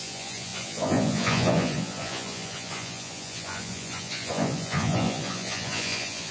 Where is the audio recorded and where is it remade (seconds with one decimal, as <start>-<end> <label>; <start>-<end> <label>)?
0.0-6.3 remade